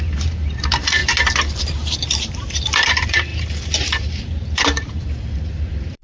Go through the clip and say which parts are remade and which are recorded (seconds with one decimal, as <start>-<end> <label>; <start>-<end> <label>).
0.0-1.0 remade; 1.0-1.6 recorded; 1.6-6.0 remade